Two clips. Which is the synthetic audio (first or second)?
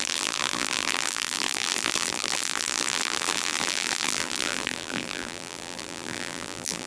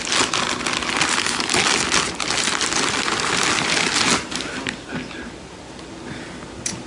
first